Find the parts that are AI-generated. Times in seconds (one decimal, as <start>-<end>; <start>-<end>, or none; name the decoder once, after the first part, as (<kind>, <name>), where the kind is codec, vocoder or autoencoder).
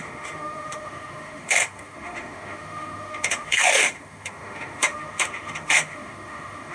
0.0-6.7 (autoencoder, DAC-VAE)